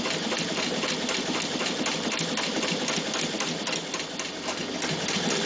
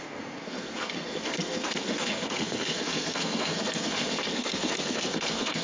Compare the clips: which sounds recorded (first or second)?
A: first